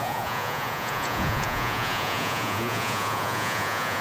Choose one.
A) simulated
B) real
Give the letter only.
A